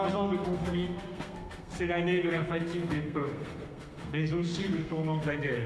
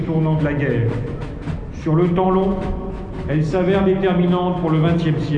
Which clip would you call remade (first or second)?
first